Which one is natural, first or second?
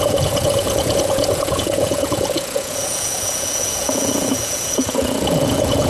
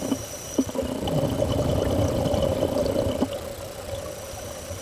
second